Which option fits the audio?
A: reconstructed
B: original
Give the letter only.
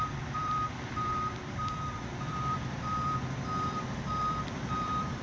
A